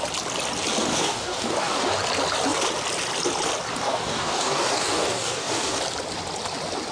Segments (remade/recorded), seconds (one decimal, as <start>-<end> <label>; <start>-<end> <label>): 0.0-0.9 recorded; 0.9-1.9 remade; 1.9-3.7 recorded; 3.7-5.8 remade; 5.8-6.9 recorded